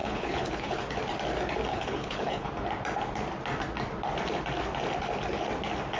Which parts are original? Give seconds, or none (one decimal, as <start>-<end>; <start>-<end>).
0.8-1.7; 2.5-6.0